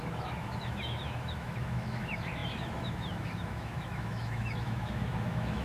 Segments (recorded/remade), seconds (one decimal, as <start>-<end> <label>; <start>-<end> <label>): 0.0-5.6 remade